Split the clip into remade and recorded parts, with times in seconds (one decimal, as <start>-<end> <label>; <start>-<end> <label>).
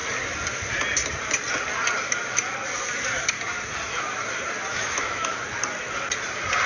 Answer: 0.0-4.7 recorded; 4.7-5.4 remade; 5.4-6.7 recorded